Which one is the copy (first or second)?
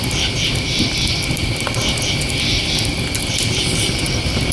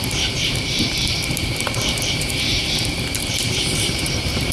second